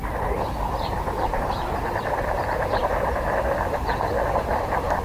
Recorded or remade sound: remade